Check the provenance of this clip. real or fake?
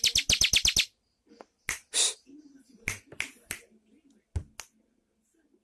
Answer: real